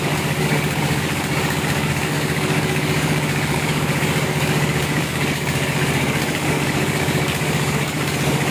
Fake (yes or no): yes